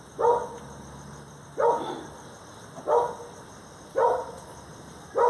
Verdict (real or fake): real